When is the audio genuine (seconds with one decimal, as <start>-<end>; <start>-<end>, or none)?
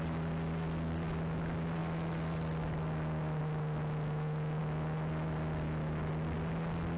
0.0-7.0